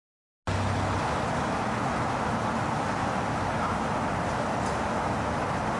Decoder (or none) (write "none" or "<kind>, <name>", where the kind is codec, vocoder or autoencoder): none